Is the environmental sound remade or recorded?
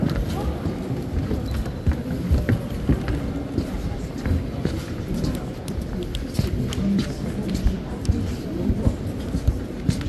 recorded